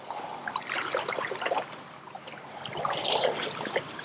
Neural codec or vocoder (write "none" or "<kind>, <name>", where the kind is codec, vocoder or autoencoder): vocoder, BigVGAN v2